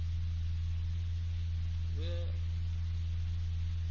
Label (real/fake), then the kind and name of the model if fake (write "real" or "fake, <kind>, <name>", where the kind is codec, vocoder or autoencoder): real